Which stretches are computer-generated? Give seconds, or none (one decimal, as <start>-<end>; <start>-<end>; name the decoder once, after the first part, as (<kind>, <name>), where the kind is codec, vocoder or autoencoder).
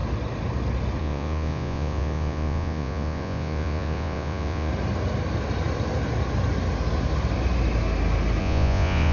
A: 1.0-4.7 (vocoder, Vocos); 8.4-9.1